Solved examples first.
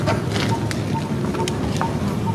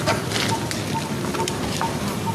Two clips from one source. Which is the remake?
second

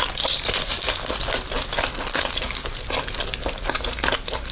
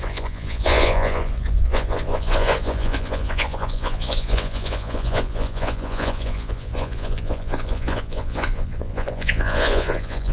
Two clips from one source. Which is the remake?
second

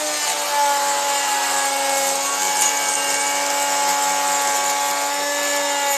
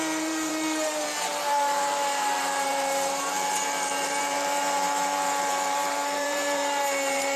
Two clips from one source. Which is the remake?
second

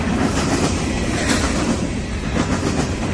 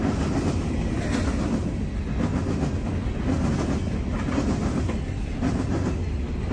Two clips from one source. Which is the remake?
first